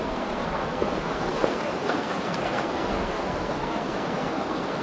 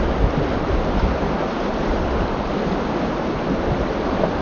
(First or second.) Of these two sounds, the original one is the second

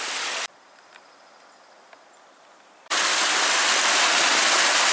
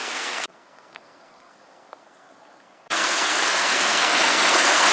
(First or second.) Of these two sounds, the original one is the first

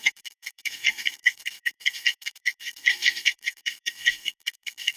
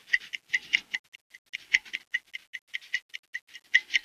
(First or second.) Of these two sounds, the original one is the second